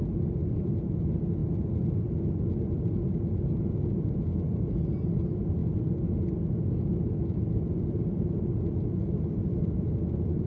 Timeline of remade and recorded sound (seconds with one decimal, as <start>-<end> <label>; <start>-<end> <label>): 0.0-10.5 recorded